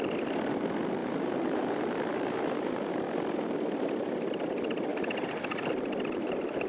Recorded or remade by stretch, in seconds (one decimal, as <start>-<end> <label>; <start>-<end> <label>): 0.0-1.0 recorded; 1.0-2.9 remade; 2.9-6.7 recorded